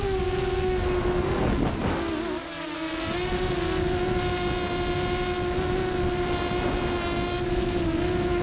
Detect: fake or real real